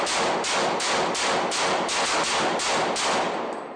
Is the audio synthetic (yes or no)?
no